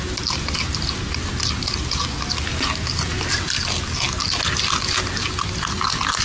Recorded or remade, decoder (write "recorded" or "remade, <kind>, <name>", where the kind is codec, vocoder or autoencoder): recorded